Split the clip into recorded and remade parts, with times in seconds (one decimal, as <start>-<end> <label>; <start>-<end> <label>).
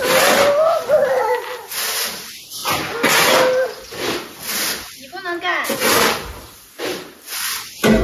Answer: 0.0-8.0 recorded